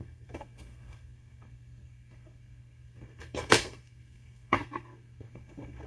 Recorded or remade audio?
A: remade